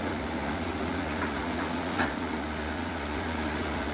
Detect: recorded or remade remade